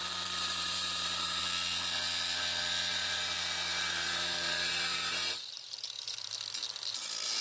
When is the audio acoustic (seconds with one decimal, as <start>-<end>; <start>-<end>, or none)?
1.4-2.9; 6.3-7.4